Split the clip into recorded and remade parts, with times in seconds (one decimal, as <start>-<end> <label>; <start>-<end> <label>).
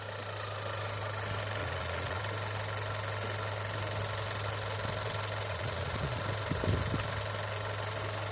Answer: 0.0-1.6 recorded; 1.6-2.2 remade; 2.2-5.5 recorded; 5.5-6.2 remade; 6.2-8.3 recorded